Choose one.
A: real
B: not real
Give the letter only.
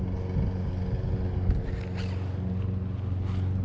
A